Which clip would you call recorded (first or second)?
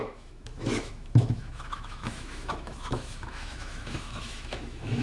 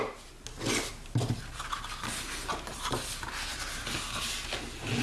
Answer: second